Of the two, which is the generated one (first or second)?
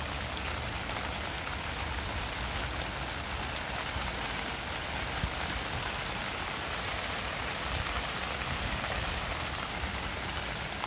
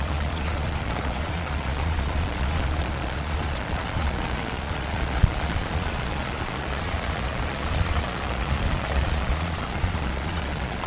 second